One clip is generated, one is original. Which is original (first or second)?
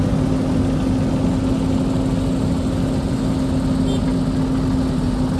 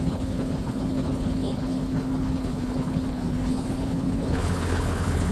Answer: first